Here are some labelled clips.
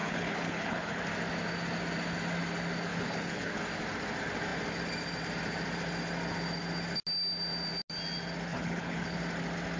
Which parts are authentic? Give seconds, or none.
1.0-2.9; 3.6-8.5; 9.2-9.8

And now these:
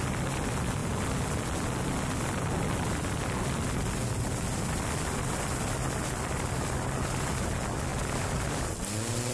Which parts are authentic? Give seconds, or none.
0.0-9.3

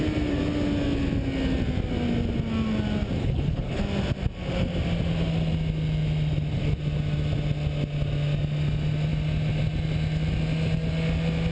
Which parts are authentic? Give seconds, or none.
0.0-3.2; 3.8-11.5

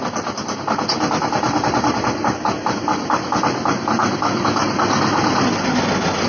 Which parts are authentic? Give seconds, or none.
0.0-6.3

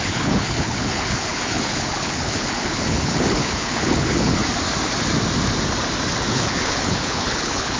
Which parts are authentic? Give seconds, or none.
4.4-6.3

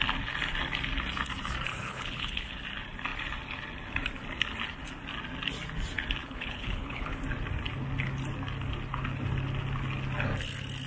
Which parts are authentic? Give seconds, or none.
0.0-1.7; 2.5-6.2; 7.2-10.9